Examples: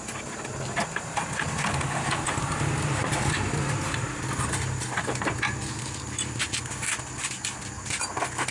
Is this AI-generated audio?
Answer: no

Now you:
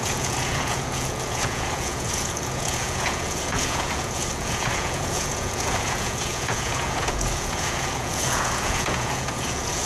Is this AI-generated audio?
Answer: yes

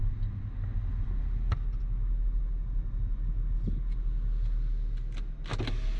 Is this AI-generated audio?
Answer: no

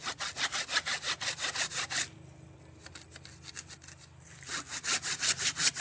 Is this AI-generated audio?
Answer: no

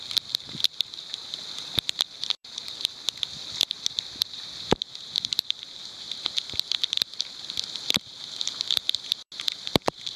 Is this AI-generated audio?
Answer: no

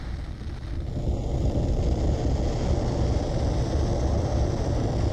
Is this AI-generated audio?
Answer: no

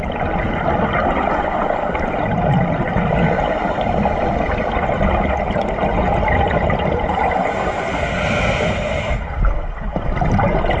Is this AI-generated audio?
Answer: no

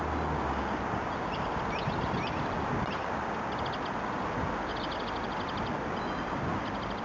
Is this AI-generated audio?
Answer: no